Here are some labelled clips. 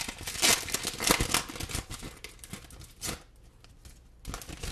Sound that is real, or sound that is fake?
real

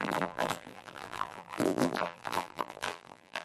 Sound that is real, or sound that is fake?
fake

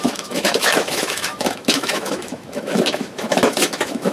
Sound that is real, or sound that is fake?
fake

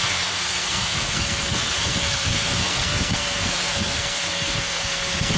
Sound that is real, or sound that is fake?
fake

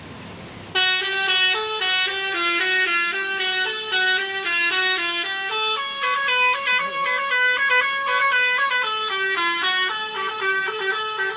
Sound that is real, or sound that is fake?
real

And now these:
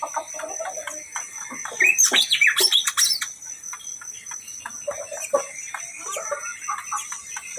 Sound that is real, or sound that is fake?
real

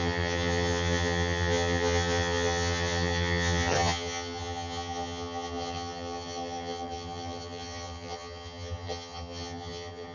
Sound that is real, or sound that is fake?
fake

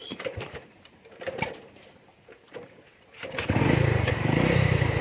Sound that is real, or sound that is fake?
fake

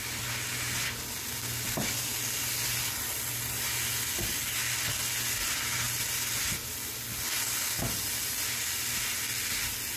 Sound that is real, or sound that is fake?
real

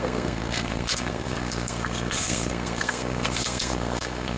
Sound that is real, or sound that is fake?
fake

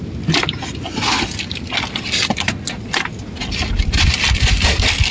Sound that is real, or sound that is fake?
real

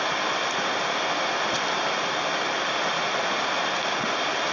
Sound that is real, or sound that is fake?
real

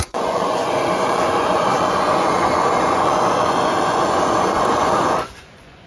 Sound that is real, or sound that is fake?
fake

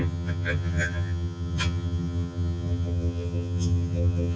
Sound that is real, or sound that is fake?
fake